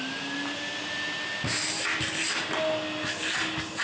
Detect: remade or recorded recorded